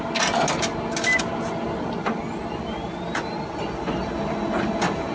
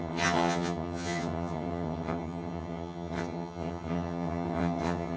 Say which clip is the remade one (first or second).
second